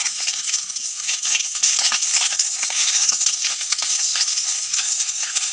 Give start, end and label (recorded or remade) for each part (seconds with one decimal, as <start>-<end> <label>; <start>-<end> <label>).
0.0-5.5 remade